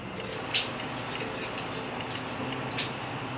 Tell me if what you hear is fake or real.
real